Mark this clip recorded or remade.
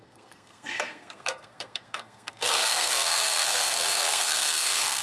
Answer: remade